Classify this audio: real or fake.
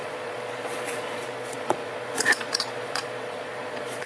fake